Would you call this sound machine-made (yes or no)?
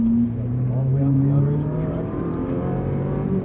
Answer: yes